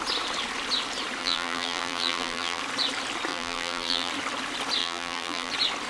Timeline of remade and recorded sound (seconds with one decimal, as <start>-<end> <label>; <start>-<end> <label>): 0.0-1.2 recorded; 1.2-2.6 remade; 2.6-3.3 recorded; 3.3-4.1 remade; 4.1-4.8 recorded; 4.8-5.5 remade; 5.5-5.9 recorded